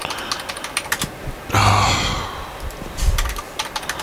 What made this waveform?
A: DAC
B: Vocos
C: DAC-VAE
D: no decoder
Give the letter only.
D